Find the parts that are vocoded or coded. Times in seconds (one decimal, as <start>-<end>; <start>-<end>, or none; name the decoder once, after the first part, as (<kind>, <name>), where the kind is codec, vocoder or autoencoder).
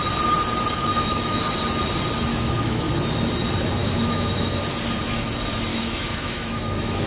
0.9-1.4 (autoencoder, DAC-VAE); 2.3-2.9; 3.8-4.6; 5.7-7.1